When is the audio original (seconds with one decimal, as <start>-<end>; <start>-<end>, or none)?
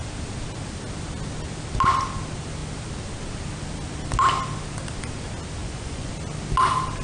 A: 0.0-5.6; 6.1-7.0